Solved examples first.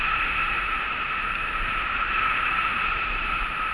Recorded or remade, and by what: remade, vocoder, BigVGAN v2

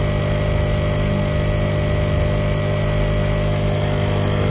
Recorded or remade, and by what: recorded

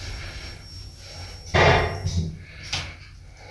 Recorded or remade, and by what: recorded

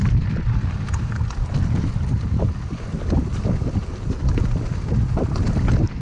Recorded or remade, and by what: recorded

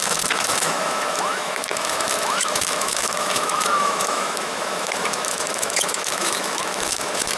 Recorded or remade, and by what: remade, autoencoder, DAC-VAE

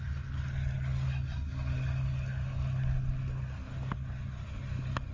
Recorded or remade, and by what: recorded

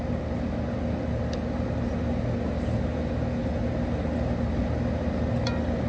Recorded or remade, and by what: recorded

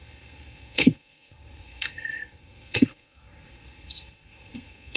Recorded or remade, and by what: remade, codec, SNAC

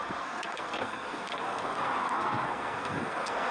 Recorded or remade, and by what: remade, codec, SNAC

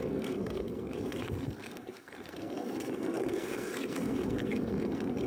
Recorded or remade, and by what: remade, codec, SNAC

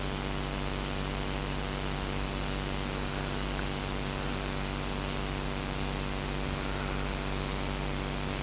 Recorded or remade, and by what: remade, vocoder, BigVGAN v2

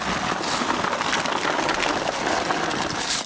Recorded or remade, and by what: recorded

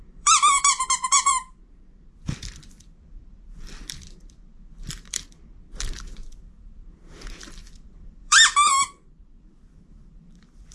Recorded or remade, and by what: remade, vocoder, BigVGAN v2